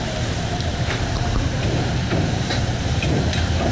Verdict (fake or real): fake